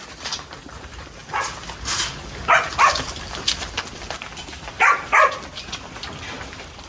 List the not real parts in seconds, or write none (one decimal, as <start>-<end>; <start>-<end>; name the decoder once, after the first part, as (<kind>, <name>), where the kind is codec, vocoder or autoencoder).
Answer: none